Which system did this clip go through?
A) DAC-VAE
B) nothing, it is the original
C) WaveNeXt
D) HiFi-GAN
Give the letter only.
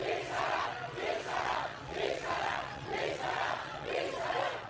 C